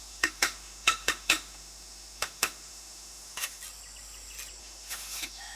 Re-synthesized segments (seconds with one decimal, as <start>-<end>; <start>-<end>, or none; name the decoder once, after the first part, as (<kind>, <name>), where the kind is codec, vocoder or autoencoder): 0.0-3.6 (autoencoder, DAC-VAE); 4.6-5.6